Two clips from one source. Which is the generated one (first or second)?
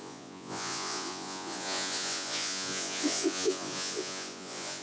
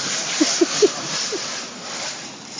first